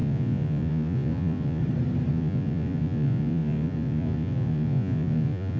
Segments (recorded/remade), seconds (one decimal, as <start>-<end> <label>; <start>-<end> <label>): 0.0-1.6 remade; 1.6-2.1 recorded; 2.1-5.6 remade